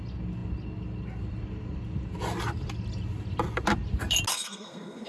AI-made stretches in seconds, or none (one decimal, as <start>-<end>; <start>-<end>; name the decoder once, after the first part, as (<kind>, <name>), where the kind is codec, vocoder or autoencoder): 4.3-5.1 (codec, SNAC)